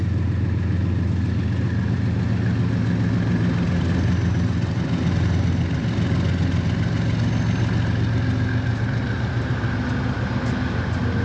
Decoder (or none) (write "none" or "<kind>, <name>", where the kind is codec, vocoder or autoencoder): none